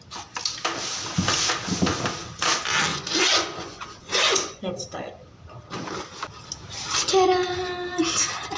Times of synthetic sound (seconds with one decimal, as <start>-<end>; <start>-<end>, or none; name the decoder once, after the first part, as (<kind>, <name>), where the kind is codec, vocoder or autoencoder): 2.9-4.7 (vocoder, Vocos)